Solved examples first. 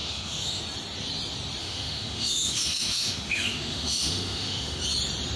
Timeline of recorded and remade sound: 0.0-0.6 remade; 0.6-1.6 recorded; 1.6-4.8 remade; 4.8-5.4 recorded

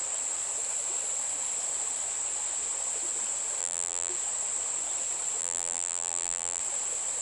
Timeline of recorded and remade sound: 0.0-3.6 recorded; 3.6-4.1 remade; 4.1-5.4 recorded; 5.4-6.6 remade; 6.6-7.2 recorded

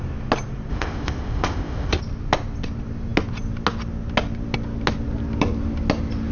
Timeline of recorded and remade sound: 0.0-0.7 recorded; 0.7-2.0 remade; 2.0-6.3 recorded

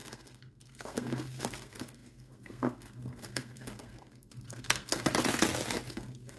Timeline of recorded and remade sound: 0.0-5.1 remade; 5.1-5.9 recorded; 5.9-6.4 remade

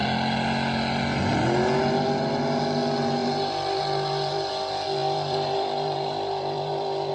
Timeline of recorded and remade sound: 0.0-3.2 recorded; 3.2-4.5 remade; 4.5-5.0 recorded; 5.0-7.1 remade

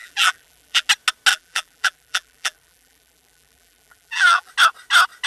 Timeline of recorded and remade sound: 0.0-0.9 remade; 0.9-1.3 recorded; 1.3-4.5 remade; 4.5-5.3 recorded

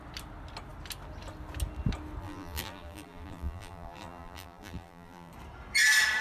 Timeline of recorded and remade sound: 0.0-2.2 recorded; 2.2-5.3 remade; 5.3-6.2 recorded

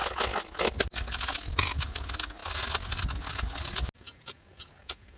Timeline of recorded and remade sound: 0.0-5.2 recorded